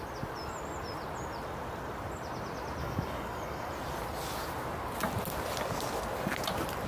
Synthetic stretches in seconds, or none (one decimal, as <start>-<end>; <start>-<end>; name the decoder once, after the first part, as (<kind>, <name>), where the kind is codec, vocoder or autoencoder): 2.8-3.7 (codec, DAC)